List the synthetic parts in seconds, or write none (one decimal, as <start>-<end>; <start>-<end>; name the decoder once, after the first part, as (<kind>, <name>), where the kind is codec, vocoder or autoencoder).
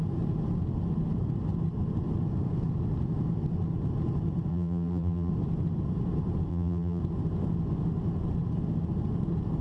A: 4.5-5.3 (vocoder, BigVGAN v2); 6.5-7.0